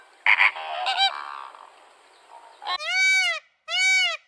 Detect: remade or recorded recorded